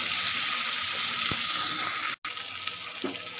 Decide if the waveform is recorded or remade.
recorded